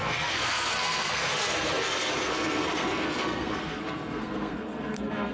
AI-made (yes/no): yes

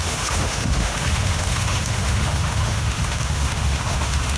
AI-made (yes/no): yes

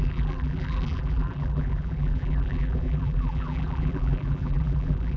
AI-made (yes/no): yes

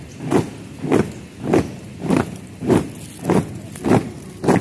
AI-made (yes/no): no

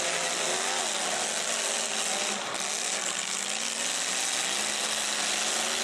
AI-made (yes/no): no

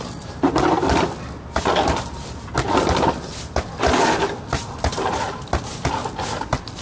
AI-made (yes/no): no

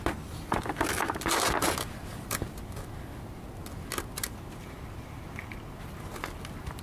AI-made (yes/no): no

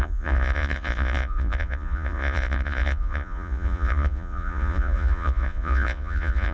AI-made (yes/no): yes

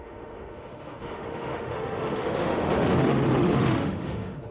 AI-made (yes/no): yes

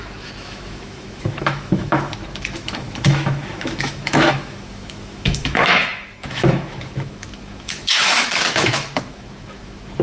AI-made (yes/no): yes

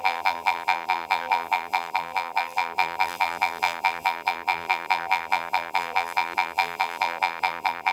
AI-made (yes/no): yes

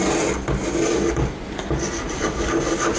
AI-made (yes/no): no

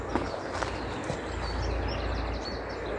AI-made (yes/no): no